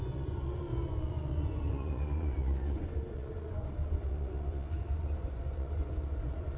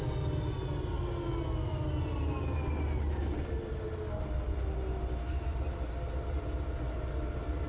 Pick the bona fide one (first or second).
second